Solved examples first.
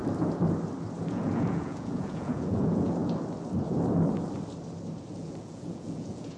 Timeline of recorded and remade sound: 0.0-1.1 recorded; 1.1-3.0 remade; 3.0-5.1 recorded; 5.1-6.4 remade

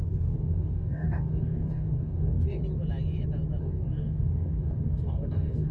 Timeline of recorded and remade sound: 0.0-2.6 remade; 2.6-3.6 recorded; 3.6-5.7 remade

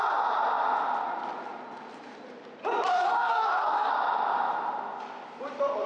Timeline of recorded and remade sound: 0.0-2.9 recorded; 2.9-3.9 remade; 3.9-5.9 recorded

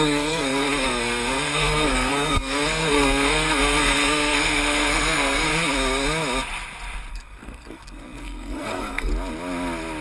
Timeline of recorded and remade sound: 0.0-5.5 remade; 5.5-7.1 recorded; 7.1-9.1 remade; 9.1-10.0 recorded

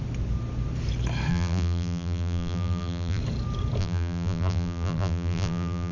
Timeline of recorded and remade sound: 0.0-1.3 recorded; 1.3-3.2 remade; 3.2-3.8 recorded; 3.8-5.9 remade

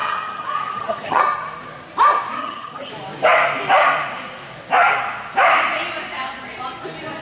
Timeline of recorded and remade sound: 0.0-1.2 remade; 1.2-2.4 recorded; 2.4-2.9 remade; 2.9-7.2 recorded

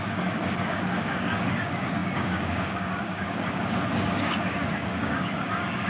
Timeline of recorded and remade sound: 0.0-5.9 remade

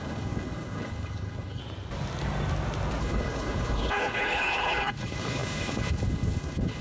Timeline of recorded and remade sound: 0.0-1.6 remade; 1.6-3.0 recorded; 3.0-6.8 remade